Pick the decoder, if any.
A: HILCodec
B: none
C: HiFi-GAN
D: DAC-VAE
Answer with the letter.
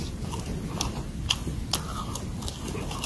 B